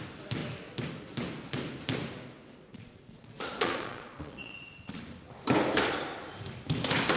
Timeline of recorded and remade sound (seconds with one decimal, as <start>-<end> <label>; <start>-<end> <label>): 0.0-2.7 recorded; 2.7-5.0 remade; 5.0-7.2 recorded